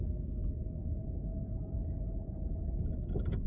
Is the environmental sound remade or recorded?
recorded